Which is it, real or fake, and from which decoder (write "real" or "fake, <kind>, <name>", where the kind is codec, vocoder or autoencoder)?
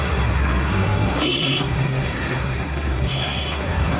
fake, codec, SNAC